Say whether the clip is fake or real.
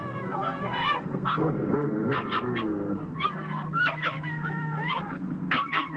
fake